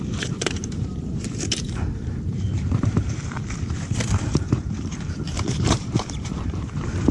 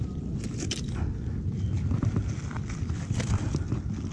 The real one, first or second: second